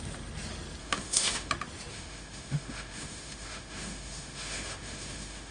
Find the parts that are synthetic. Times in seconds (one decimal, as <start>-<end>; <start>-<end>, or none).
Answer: 0.8-1.5; 1.9-5.5